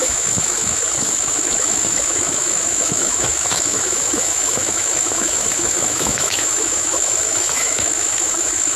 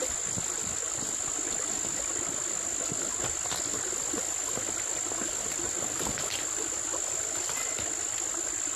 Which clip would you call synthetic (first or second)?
first